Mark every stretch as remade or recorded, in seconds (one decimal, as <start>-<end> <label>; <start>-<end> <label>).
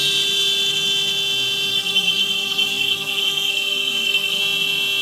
0.0-1.7 recorded; 1.7-4.4 remade; 4.4-5.0 recorded